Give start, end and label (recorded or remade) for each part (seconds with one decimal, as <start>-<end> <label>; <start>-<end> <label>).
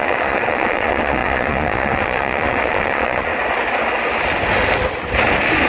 0.0-3.3 remade; 3.3-5.7 recorded